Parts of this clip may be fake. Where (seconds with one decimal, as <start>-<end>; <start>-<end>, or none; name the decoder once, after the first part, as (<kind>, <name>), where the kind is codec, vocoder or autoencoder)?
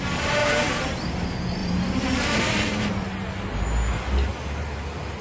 0.4-1.1 (vocoder, BigVGAN v2); 1.6-2.9